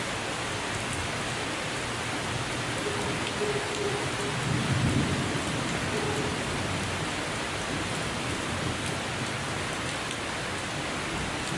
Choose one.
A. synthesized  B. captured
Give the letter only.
B